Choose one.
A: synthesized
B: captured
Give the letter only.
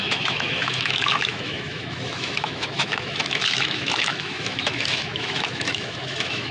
A